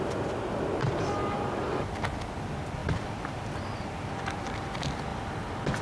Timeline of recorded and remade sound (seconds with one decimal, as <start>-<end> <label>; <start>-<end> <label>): 0.0-0.8 recorded; 0.8-1.9 remade; 1.9-2.8 recorded; 2.8-3.9 remade; 3.9-5.1 recorded; 5.1-5.8 remade